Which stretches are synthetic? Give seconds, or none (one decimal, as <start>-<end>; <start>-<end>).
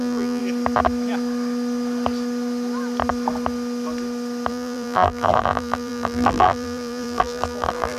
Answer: 0.0-0.4; 4.5-8.0